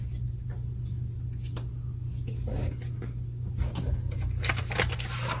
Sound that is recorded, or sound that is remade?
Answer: recorded